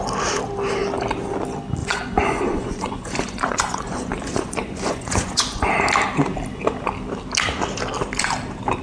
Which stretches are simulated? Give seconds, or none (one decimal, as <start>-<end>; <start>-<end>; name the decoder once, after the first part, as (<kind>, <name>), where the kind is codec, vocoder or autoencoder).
1.8-5.7 (vocoder, Vocos)